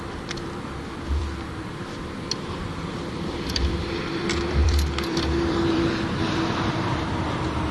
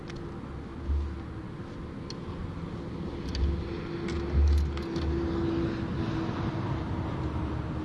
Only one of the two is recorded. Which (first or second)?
second